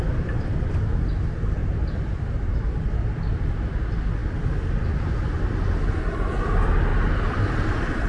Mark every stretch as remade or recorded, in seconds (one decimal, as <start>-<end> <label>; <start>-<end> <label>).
0.0-1.6 recorded; 1.6-2.7 remade; 2.7-6.9 recorded; 6.9-8.1 remade